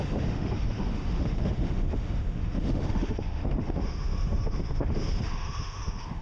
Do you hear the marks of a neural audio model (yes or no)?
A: yes